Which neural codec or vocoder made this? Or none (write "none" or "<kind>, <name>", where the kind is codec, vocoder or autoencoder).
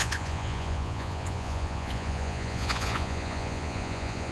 vocoder, Vocos